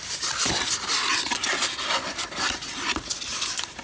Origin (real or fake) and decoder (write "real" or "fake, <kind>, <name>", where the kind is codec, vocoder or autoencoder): real